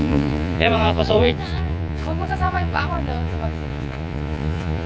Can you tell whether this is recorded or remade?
remade